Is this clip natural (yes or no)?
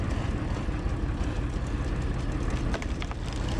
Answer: yes